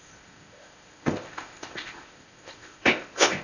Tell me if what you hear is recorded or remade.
remade